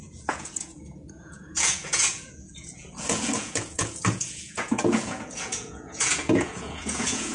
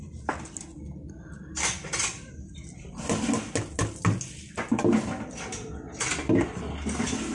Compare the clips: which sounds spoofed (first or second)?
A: first